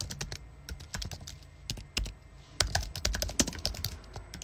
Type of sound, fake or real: real